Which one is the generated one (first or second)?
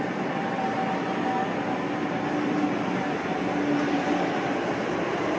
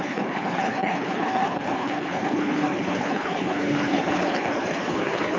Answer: second